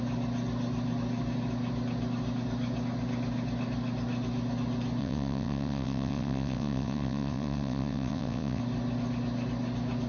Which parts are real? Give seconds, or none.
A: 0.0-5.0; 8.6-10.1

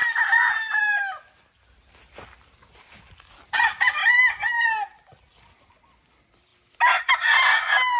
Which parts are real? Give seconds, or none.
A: 0.0-8.0